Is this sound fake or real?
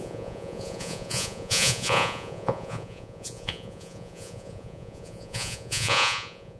fake